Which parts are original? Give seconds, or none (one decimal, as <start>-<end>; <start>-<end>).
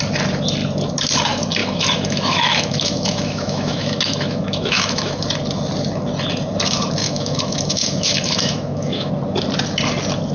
0.0-1.6; 5.2-7.0; 9.1-10.3